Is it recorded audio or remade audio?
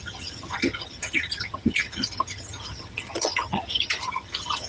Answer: remade